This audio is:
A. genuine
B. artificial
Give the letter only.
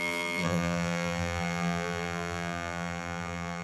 B